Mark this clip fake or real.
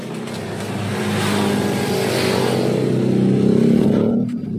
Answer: real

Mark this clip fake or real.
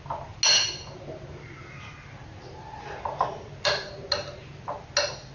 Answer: real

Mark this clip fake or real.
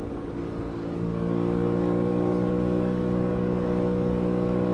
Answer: fake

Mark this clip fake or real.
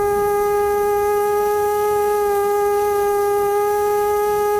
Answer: fake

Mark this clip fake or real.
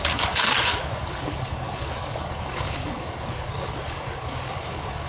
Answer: fake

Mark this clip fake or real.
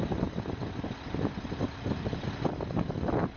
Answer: real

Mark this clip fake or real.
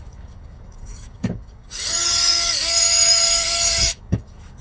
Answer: fake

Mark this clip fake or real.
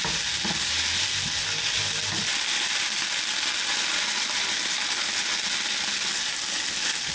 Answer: real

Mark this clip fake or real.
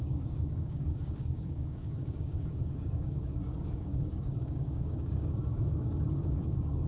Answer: fake